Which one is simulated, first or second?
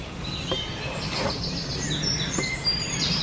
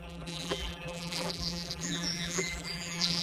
second